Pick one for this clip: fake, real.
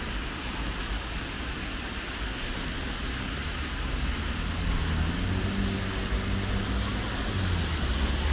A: real